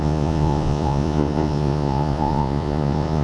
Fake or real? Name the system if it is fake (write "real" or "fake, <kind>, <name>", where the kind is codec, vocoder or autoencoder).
fake, vocoder, Vocos